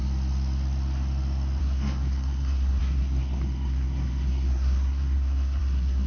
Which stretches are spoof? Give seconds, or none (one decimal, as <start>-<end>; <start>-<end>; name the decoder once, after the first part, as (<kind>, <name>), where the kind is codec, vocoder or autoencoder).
1.6-6.1 (codec, SNAC)